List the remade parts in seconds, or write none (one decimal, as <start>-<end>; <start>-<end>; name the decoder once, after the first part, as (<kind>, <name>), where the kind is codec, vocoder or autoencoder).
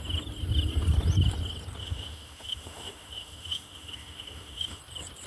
1.8-4.8 (autoencoder, DAC-VAE)